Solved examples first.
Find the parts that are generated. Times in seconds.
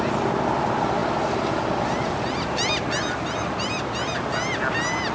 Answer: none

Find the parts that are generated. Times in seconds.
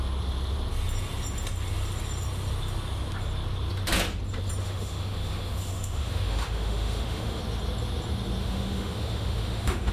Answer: 4.6-7.4 (autoencoder, DAC-VAE); 8.4-9.9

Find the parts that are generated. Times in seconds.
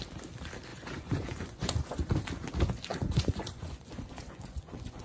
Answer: 0.7-2.1 (vocoder, Vocos); 2.9-5.0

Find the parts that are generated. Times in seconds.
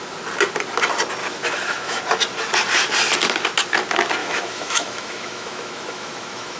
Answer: 1.2-2.0 (autoencoder, DAC-VAE); 4.2-6.6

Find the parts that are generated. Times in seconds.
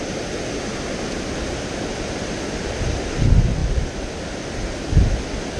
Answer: 0.7-3.2 (vocoder, BigVGAN v2); 3.6-4.3